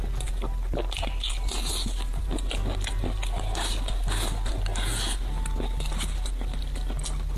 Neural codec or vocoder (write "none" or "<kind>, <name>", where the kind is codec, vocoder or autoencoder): none